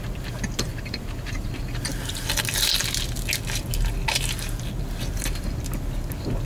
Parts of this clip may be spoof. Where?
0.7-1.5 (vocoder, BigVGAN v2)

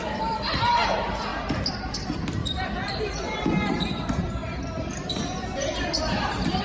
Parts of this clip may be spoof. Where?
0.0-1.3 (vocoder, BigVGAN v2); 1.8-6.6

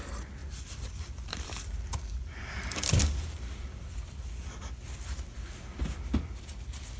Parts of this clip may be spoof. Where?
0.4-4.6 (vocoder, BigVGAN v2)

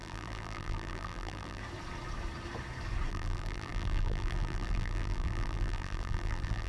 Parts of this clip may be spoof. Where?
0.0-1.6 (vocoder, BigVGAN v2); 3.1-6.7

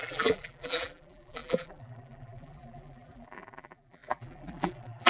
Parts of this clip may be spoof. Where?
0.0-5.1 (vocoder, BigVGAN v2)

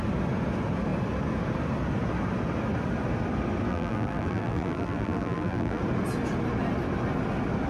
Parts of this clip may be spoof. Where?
3.7-5.8 (vocoder, BigVGAN v2)

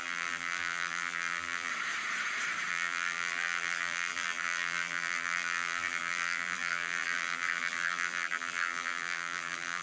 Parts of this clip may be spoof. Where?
0.0-1.7 (vocoder, BigVGAN v2); 2.7-9.8